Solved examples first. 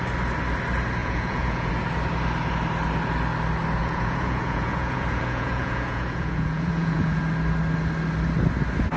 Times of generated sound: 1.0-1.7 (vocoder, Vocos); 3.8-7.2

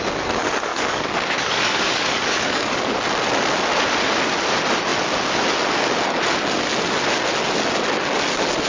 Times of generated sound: 0.7-3.0 (codec, DAC)